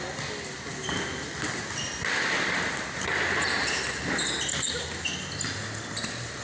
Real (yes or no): yes